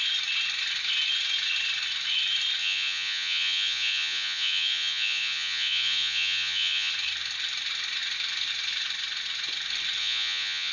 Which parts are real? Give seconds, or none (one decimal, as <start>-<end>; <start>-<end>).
0.0-2.6; 6.9-10.0